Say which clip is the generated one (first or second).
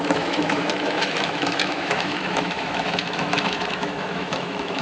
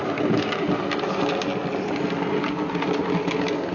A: first